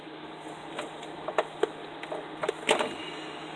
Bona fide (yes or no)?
yes